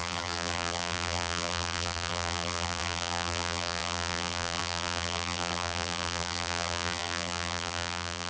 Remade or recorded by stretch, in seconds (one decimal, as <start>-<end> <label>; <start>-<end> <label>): 0.0-8.3 remade